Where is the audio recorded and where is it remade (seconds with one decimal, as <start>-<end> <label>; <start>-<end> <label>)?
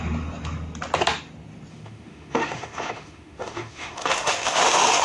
0.0-1.7 recorded; 1.7-5.0 remade